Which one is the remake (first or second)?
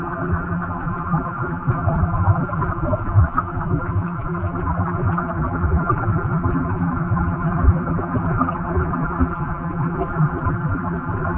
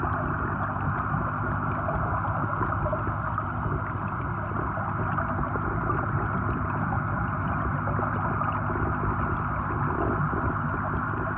first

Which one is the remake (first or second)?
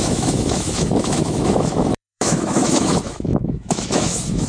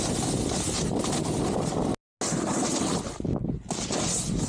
first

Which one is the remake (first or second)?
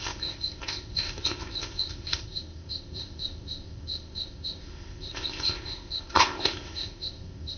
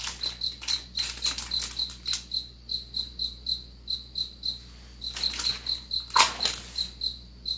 first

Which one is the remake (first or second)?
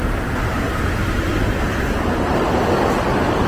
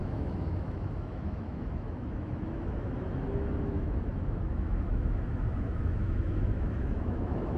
second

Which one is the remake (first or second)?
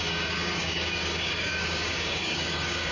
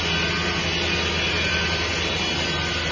first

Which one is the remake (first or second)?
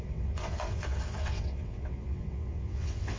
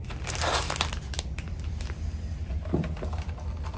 first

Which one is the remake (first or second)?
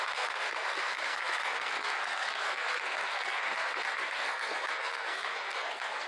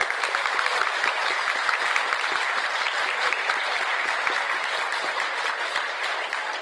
first